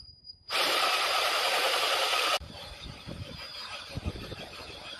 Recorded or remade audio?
remade